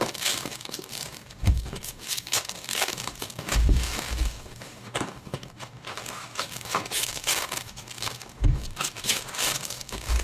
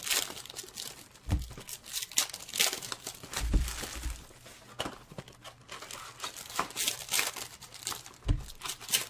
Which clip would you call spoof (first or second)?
first